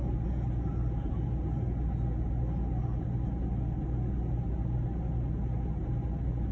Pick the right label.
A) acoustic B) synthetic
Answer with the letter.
A